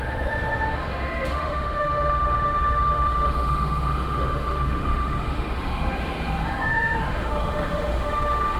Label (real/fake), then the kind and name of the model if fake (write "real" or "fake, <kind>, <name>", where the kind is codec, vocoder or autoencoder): fake, autoencoder, DAC-VAE